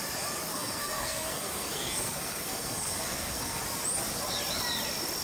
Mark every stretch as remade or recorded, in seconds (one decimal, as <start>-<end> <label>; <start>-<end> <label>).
0.0-0.5 recorded; 0.5-3.6 remade; 3.6-5.2 recorded